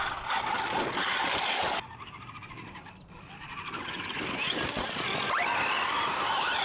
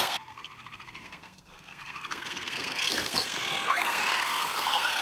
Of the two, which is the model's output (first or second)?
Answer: second